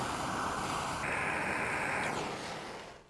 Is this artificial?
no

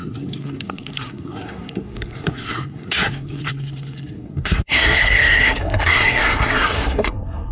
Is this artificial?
yes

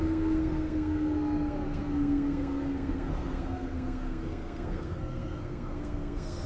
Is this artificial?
yes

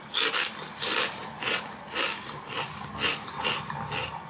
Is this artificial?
no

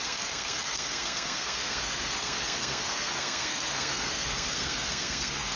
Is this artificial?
yes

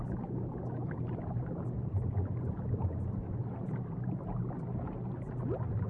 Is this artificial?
no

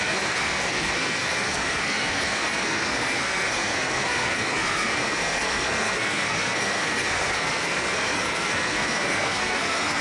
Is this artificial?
yes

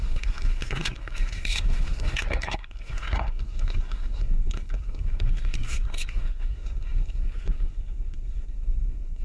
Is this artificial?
yes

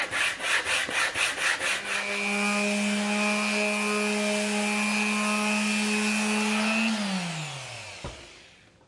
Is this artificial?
no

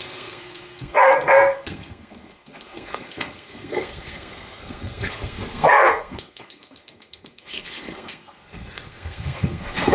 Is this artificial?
yes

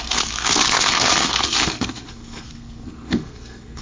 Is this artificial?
yes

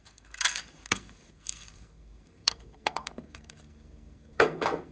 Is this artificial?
yes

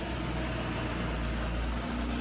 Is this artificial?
no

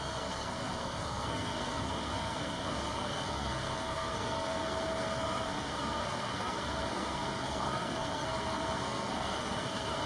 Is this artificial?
yes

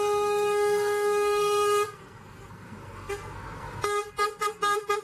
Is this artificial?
yes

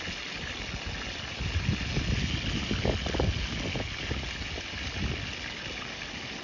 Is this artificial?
no